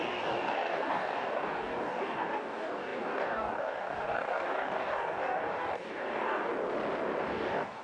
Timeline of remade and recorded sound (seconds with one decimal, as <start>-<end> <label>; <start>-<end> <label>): 0.0-6.5 remade; 6.5-7.2 recorded; 7.2-7.8 remade